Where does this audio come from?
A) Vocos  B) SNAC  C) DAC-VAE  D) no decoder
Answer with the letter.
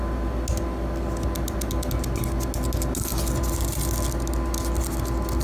D